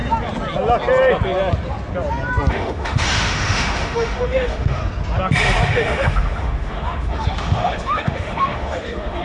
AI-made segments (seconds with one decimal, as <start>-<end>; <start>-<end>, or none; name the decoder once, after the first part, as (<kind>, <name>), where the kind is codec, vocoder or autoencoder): 2.5-4.8 (autoencoder, DAC-VAE); 5.7-9.2